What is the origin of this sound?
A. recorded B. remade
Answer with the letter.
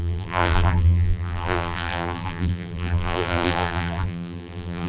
B